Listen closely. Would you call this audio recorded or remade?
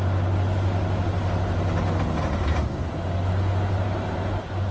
recorded